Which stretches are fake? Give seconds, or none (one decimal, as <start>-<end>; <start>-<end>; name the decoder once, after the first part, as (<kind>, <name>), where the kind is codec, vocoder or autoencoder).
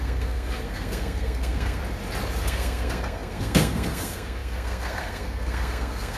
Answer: 0.0-1.8 (codec, SNAC); 2.4-6.2